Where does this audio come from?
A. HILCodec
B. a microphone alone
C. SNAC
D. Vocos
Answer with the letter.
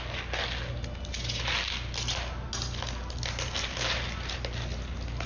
B